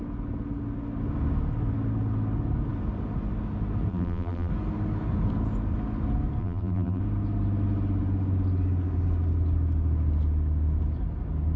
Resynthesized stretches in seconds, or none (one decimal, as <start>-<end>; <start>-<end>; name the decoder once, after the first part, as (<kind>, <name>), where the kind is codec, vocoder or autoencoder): 3.9-4.5 (vocoder, BigVGAN v2); 6.4-7.0